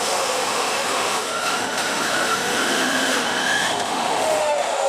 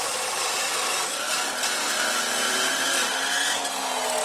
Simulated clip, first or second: first